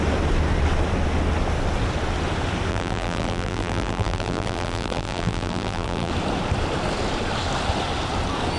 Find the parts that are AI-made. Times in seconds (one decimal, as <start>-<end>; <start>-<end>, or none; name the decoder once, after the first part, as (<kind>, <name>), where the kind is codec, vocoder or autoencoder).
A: 2.7-6.1 (vocoder, BigVGAN v2)